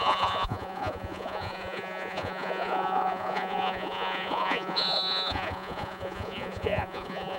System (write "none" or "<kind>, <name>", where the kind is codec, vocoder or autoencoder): vocoder, Vocos